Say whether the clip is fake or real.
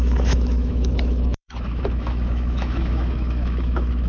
fake